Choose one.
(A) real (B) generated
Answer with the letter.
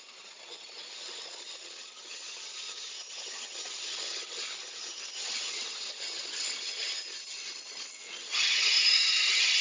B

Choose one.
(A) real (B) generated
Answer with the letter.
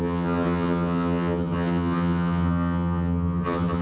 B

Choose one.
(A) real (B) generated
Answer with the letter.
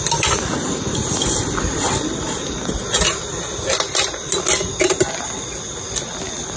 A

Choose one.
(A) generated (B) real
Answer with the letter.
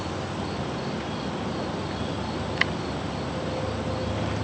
B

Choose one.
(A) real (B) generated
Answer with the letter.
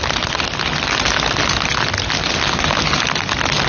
A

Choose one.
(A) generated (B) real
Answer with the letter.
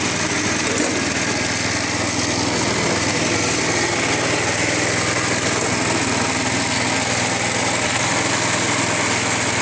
B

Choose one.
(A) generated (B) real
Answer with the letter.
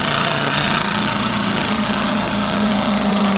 A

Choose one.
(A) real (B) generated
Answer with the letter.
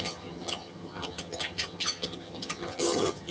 B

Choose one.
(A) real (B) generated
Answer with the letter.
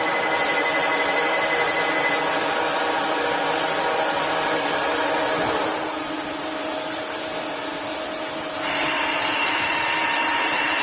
A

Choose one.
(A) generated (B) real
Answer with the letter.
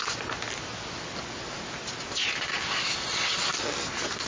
B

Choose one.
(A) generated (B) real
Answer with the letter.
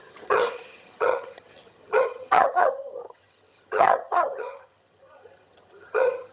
A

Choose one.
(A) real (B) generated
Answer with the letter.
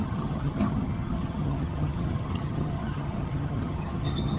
B